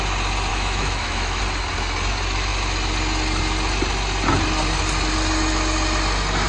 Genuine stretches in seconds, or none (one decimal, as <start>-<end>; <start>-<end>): 0.0-0.5; 1.4-6.5

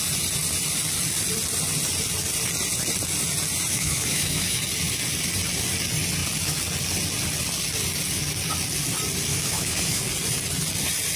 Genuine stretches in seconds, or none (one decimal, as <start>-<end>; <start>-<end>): 0.0-3.7; 4.6-9.3; 10.0-11.2